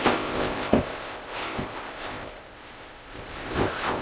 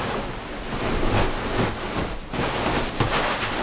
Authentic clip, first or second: second